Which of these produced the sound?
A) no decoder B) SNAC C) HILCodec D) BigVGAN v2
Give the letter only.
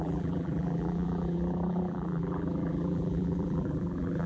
D